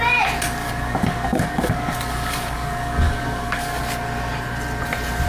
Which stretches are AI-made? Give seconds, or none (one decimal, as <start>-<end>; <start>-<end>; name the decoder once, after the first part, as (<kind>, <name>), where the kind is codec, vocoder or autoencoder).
0.6-3.8 (codec, DAC)